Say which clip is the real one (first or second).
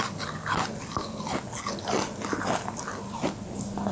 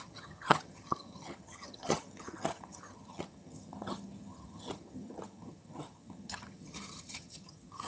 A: first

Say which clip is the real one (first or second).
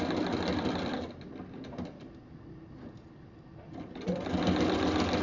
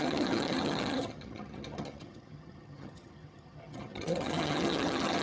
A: first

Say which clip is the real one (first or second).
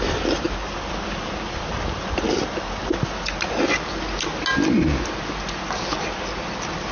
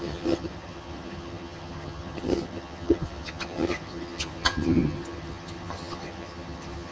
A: first